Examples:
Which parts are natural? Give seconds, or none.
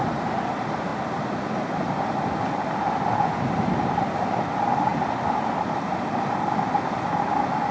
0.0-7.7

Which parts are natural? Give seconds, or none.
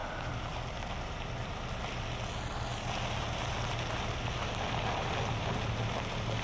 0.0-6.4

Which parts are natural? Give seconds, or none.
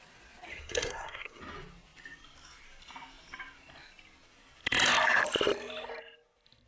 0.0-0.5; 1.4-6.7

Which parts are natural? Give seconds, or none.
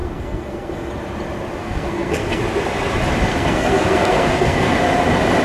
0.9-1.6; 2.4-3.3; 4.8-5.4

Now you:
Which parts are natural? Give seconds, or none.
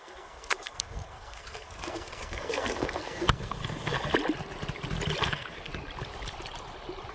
4.1-5.2; 5.7-7.1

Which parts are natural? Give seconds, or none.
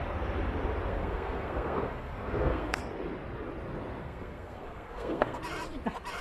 0.0-0.9; 2.8-4.0; 5.4-6.2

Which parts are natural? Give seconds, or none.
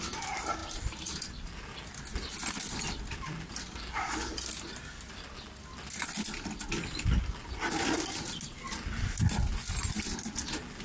0.0-10.8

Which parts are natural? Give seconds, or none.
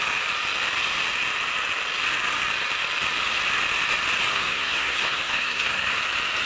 0.0-4.3; 6.0-6.5